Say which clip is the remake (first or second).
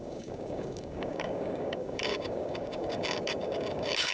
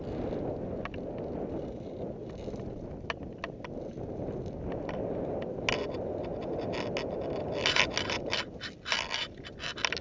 first